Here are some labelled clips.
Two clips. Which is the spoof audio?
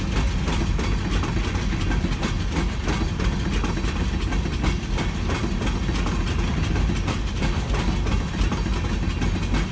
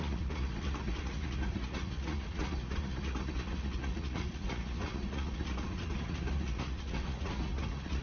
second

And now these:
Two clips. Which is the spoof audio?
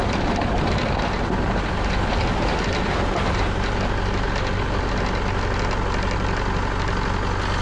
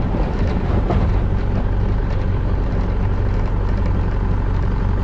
second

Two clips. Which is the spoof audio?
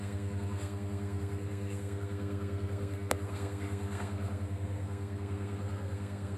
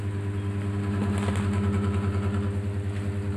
first